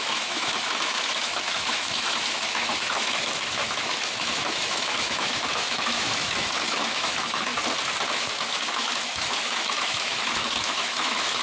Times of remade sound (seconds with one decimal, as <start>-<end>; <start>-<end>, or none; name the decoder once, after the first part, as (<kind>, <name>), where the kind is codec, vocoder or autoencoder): 0.0-7.5 (autoencoder, DAC-VAE); 8.1-11.4